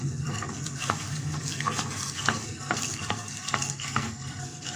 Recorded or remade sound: remade